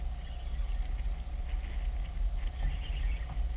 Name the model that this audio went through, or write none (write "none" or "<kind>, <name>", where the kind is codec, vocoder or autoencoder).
none